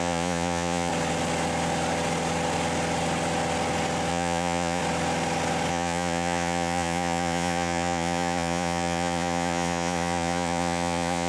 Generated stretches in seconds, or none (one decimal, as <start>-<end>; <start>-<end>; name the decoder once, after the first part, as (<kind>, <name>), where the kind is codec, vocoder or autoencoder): 0.0-0.9 (vocoder, Vocos); 4.1-4.8; 5.7-11.3